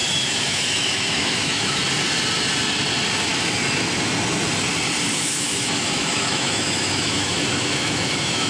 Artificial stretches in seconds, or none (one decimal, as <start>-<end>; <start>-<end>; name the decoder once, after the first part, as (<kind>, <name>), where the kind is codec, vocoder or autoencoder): 0.0-1.8 (autoencoder, DAC-VAE); 5.1-8.5